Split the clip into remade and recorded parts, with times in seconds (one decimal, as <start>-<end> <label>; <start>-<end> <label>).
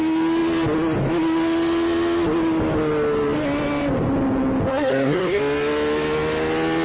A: 0.0-4.7 recorded; 4.7-5.4 remade; 5.4-6.8 recorded